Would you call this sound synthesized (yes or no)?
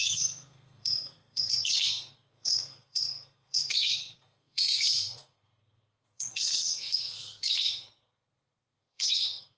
yes